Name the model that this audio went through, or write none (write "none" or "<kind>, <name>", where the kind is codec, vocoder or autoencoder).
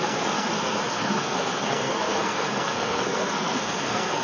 codec, SNAC